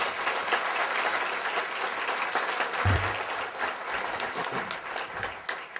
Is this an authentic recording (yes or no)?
yes